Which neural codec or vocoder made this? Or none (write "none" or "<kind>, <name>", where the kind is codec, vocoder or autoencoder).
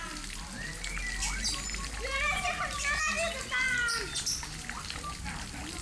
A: none